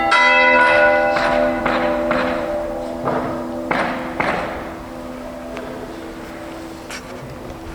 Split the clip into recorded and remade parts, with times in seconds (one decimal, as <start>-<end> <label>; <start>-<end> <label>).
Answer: 0.0-1.6 recorded; 1.6-3.9 remade; 3.9-7.7 recorded